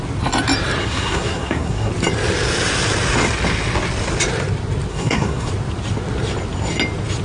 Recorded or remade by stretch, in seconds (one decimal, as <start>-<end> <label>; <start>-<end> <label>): 0.0-0.8 recorded; 0.8-1.9 remade; 1.9-4.9 recorded; 4.9-5.5 remade; 5.5-7.2 recorded